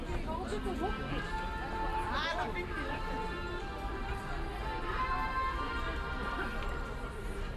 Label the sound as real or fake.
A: real